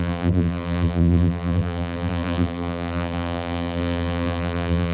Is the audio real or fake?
fake